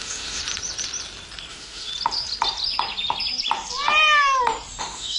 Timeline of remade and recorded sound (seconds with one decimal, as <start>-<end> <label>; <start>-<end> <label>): 0.0-0.4 remade; 0.4-1.5 recorded; 1.5-1.9 remade; 1.9-4.8 recorded; 4.8-5.2 remade